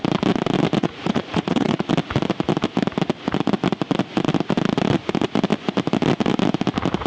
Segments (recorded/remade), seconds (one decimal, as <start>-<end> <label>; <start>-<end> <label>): 0.0-0.8 recorded; 0.8-1.9 remade; 1.9-7.1 recorded